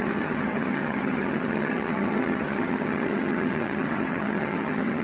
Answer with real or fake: fake